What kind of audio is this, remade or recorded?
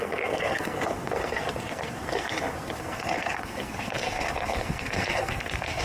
remade